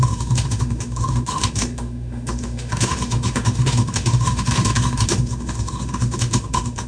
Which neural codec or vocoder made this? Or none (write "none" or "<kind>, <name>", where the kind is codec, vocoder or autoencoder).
autoencoder, DAC-VAE